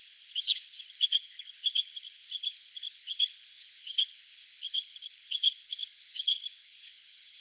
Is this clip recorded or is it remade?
remade